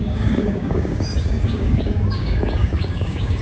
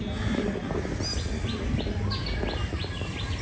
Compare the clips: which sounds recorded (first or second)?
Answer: second